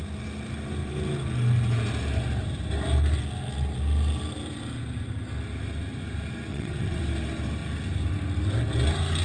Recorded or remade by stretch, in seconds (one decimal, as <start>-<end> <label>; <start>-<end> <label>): 0.0-6.5 recorded; 6.5-7.0 remade; 7.0-9.2 recorded